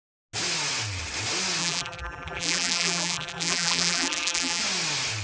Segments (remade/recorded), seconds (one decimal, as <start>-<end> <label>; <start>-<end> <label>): 0.0-1.6 recorded; 1.6-4.6 remade; 4.6-5.2 recorded